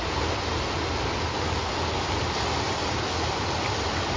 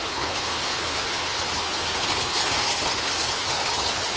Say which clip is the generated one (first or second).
second